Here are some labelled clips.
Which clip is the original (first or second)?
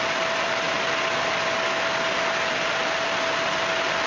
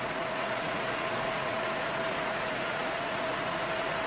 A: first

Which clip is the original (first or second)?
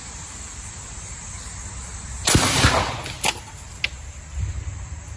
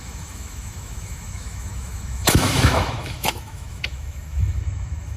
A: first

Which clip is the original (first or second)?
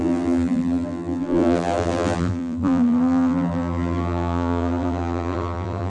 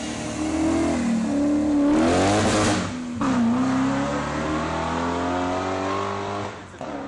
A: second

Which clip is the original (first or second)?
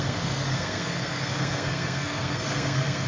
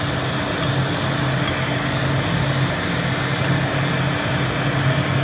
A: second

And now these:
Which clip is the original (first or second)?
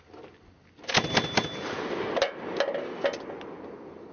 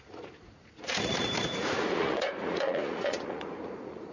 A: first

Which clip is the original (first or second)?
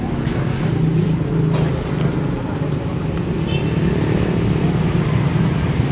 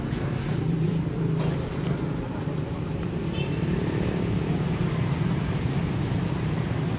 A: first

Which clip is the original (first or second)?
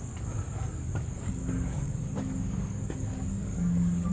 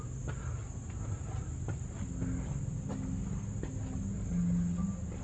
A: second